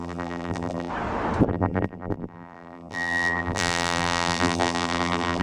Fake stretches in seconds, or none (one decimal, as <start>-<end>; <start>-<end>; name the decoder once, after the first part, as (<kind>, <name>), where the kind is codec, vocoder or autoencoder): 0.0-0.9 (vocoder, BigVGAN v2); 1.5-5.4

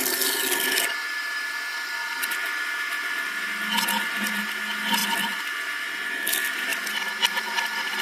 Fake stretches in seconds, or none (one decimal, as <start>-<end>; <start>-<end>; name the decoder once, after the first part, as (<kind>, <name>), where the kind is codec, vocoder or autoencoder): 5.0-5.5 (vocoder, BigVGAN v2); 6.7-8.0

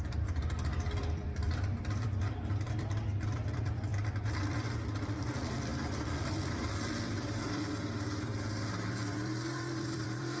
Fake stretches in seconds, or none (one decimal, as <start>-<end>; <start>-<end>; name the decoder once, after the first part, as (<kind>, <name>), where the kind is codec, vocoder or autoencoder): 0.0-10.4 (vocoder, BigVGAN v2)

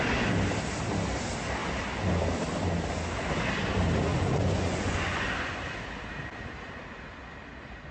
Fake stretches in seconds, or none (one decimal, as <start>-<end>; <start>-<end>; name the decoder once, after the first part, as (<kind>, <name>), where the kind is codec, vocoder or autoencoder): 4.1-5.6 (vocoder, Vocos)

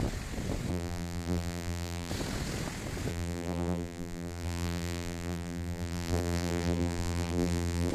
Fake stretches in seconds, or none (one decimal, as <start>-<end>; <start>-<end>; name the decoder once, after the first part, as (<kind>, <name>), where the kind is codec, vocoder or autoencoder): 0.7-2.1 (vocoder, BigVGAN v2); 3.1-7.9

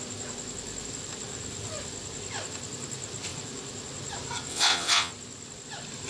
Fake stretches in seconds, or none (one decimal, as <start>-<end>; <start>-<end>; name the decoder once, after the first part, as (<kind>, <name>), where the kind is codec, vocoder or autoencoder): 4.5-5.1 (vocoder, WaveNeXt)